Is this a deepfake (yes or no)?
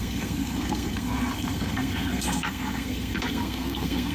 yes